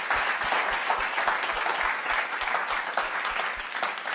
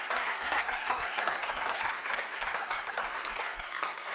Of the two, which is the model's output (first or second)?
second